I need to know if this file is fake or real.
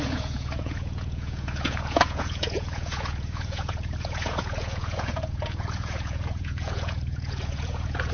fake